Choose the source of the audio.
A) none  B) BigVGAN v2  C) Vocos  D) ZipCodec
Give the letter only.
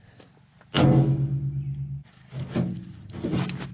A